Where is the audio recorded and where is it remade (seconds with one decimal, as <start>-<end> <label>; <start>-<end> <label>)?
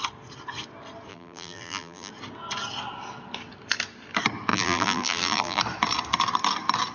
0.0-1.1 recorded; 1.1-2.1 remade; 2.1-4.5 recorded; 4.5-5.6 remade; 5.6-6.9 recorded